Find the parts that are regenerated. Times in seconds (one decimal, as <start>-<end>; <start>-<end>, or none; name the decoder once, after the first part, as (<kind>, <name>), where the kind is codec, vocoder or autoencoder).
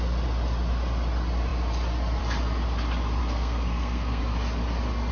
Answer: 3.2-4.2 (codec, SNAC)